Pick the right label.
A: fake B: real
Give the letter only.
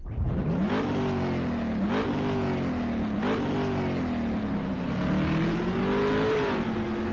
B